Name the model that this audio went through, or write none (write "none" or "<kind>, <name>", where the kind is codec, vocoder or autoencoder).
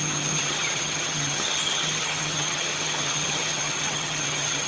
vocoder, HiFi-GAN